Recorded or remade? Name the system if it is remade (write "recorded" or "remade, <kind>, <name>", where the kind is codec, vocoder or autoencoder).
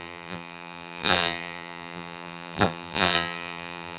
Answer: remade, vocoder, BigVGAN v2